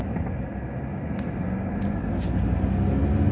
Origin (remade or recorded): recorded